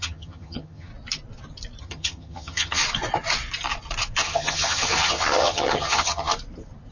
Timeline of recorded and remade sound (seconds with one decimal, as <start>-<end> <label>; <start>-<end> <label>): 0.0-0.9 remade; 0.9-1.8 recorded; 1.8-2.8 remade; 2.8-4.2 recorded; 4.2-6.3 remade; 6.3-6.9 recorded